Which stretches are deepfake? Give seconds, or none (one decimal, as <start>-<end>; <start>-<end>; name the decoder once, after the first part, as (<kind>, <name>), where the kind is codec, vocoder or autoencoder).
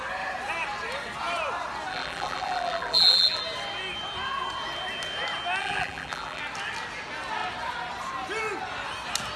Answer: 1.9-3.4 (vocoder, BigVGAN v2); 5.6-6.4